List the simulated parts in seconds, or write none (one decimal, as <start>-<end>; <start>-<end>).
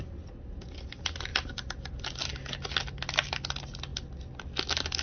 none